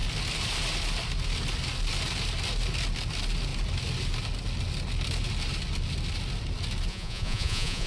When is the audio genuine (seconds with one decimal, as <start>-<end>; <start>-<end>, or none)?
0.0-6.9